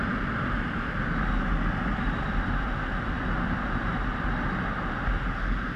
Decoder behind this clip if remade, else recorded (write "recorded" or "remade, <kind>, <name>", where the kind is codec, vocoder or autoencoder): recorded